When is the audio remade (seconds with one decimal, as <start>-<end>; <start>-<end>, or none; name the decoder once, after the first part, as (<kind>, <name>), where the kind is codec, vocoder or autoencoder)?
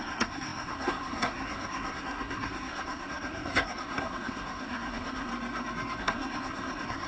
0.0-5.3 (codec, SNAC); 6.0-7.1